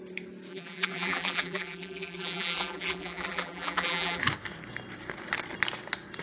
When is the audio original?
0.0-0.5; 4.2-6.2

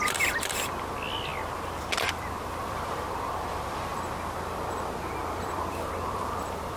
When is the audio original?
3.9-5.2

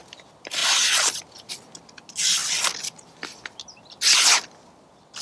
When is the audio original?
0.0-0.6; 1.5-5.2

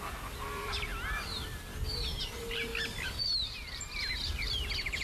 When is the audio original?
0.9-2.0; 2.7-3.2

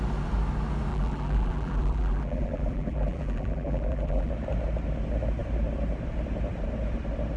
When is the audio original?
0.0-0.9; 4.3-7.4

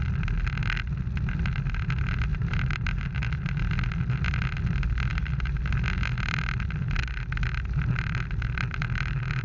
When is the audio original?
0.0-2.3; 3.7-5.1; 5.6-9.4

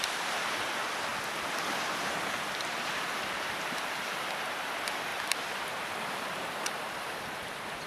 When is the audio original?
1.1-1.9; 5.1-6.0